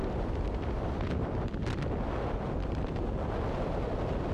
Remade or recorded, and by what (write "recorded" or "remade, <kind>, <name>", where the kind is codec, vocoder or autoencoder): recorded